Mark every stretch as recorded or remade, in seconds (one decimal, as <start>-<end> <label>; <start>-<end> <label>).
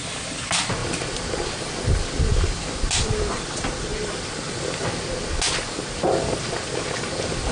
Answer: 0.0-7.5 recorded